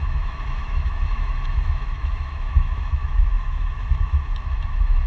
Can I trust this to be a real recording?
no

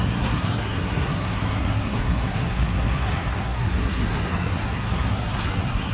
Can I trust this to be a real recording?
no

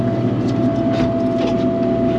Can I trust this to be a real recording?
yes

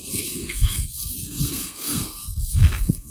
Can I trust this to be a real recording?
no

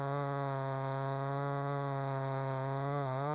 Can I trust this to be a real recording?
no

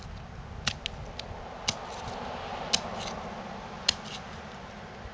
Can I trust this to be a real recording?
yes